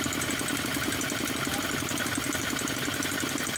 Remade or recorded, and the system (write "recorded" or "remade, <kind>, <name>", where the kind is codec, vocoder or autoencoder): recorded